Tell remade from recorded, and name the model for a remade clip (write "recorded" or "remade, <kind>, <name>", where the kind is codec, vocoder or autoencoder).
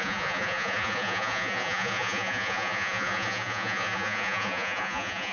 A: remade, vocoder, Vocos